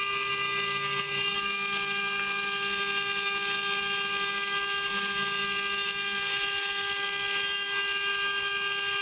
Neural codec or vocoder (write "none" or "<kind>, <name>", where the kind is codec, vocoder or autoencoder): none